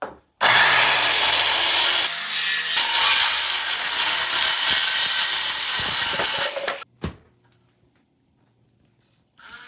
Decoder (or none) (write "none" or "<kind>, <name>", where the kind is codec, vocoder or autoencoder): none